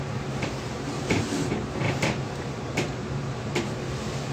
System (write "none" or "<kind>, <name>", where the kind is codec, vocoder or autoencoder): vocoder, BigVGAN v2